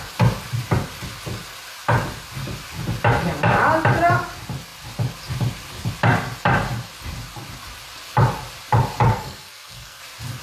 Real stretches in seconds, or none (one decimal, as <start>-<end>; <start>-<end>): 0.0-9.1; 10.0-10.4